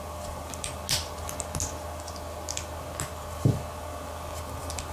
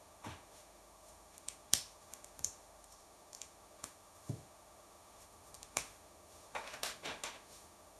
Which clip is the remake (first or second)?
second